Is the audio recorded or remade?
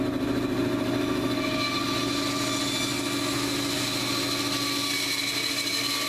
recorded